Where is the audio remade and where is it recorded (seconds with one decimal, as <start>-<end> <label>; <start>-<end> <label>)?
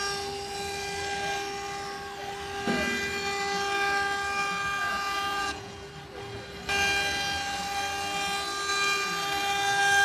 0.0-4.9 recorded; 4.9-5.9 remade; 5.9-10.0 recorded